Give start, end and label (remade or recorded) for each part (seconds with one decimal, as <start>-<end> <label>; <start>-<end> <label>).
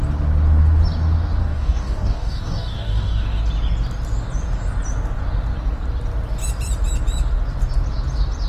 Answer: 0.0-1.4 recorded; 1.4-3.4 remade; 3.4-8.5 recorded